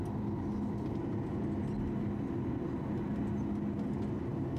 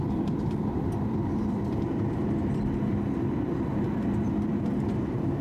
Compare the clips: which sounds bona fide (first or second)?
first